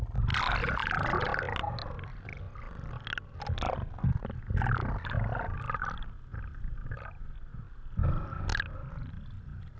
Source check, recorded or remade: recorded